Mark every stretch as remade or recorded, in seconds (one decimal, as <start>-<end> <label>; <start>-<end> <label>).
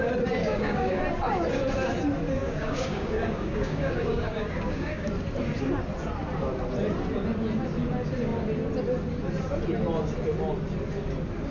0.0-0.4 recorded; 0.4-1.0 remade; 1.0-2.4 recorded; 2.4-5.1 remade; 5.1-11.5 recorded